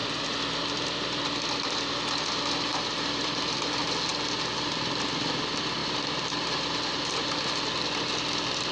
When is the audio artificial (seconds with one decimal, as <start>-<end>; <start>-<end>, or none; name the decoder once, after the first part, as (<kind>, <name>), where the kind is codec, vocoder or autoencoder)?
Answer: 2.7-3.4 (vocoder, BigVGAN v2); 5.8-7.5